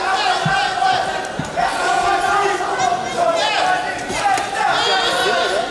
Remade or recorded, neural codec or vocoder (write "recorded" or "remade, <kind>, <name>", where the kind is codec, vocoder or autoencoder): recorded